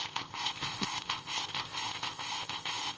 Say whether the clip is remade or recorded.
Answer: remade